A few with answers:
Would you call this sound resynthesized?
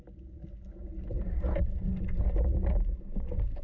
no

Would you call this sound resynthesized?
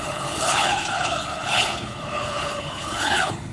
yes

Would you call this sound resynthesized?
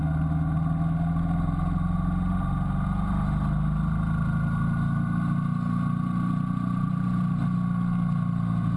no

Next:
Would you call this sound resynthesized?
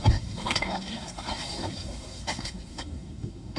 yes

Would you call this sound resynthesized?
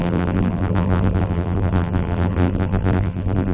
yes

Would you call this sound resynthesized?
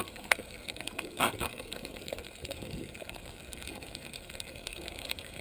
yes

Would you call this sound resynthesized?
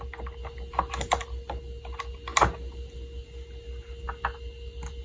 no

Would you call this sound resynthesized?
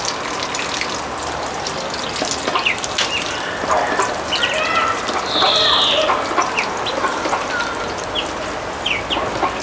no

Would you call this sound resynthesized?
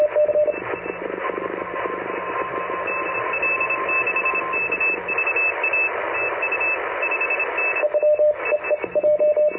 no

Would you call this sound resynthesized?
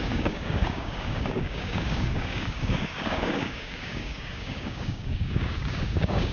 yes